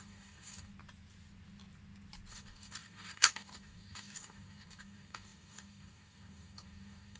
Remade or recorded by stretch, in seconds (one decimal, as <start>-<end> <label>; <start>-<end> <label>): 0.0-0.7 remade; 0.7-2.3 recorded; 2.3-7.2 remade